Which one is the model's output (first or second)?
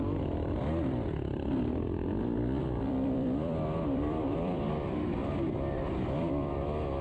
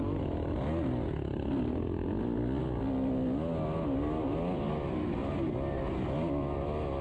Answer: first